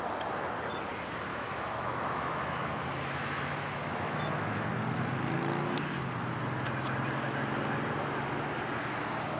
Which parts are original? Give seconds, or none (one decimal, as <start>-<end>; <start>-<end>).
0.0-1.3; 4.7-9.4